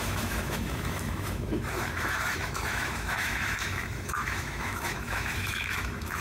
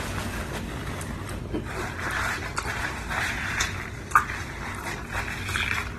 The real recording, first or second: second